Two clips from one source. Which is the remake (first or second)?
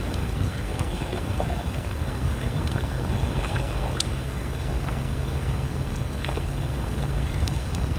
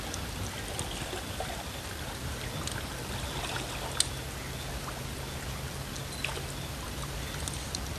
first